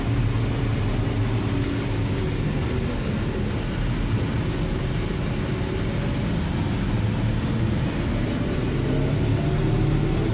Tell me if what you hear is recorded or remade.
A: recorded